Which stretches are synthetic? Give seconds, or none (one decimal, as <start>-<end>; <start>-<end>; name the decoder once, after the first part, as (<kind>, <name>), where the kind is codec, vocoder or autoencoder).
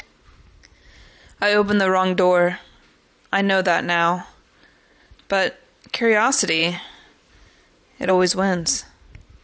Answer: 6.6-8.1 (vocoder, BigVGAN v2)